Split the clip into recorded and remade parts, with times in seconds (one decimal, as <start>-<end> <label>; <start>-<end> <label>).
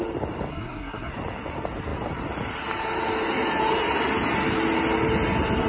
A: 0.0-0.5 recorded; 0.5-1.1 remade; 1.1-5.7 recorded